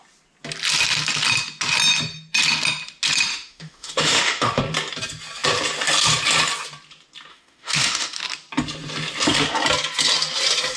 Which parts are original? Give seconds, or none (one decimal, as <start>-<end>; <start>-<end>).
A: 0.0-3.3; 4.6-7.3; 8.2-10.8